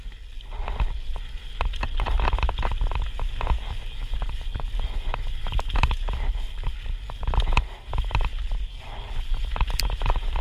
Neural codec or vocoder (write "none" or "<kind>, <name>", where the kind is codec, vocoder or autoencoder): none